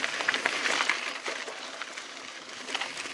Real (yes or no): yes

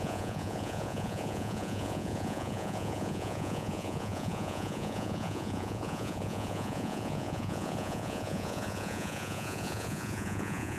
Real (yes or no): no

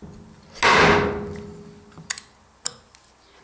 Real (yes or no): yes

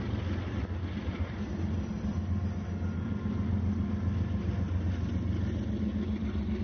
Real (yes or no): yes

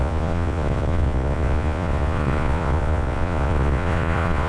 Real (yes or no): no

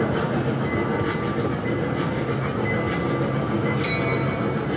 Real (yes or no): yes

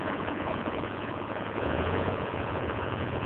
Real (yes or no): no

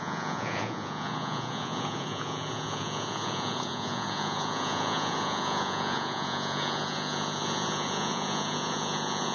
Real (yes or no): no